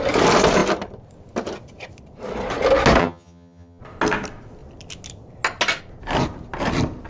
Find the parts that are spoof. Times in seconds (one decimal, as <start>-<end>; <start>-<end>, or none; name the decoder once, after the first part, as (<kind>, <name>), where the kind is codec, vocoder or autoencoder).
3.0-3.8 (vocoder, HiFi-GAN)

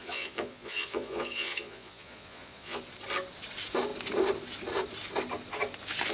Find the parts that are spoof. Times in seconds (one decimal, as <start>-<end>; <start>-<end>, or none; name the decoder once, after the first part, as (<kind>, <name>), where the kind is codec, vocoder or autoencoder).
0.0-2.8 (vocoder, Vocos)

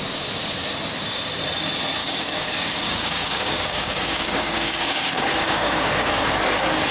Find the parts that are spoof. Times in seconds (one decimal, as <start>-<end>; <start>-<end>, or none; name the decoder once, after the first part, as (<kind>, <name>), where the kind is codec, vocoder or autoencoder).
2.0-6.1 (codec, DAC)

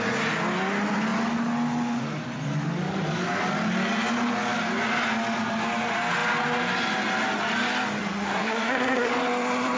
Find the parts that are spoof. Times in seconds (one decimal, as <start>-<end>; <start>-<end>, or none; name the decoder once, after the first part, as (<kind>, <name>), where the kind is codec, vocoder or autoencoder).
8.0-9.1 (codec, SNAC)

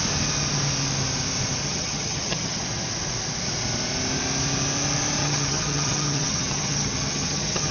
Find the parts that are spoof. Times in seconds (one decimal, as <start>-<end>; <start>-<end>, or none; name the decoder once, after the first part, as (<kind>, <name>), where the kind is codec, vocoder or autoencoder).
1.6-2.6 (vocoder, HiFi-GAN); 5.2-7.7

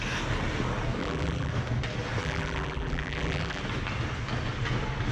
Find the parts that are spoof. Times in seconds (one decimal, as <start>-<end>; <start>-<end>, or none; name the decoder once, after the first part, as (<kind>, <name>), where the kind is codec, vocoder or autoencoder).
1.0-1.5 (vocoder, BigVGAN v2); 2.2-3.6